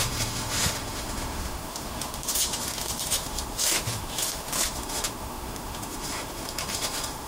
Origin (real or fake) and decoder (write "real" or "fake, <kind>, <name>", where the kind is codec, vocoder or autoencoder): fake, autoencoder, DAC-VAE